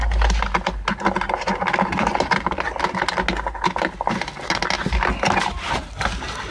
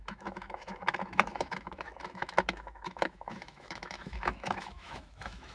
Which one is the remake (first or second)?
second